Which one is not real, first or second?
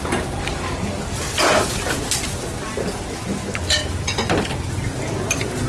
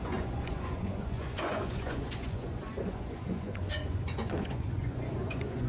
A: second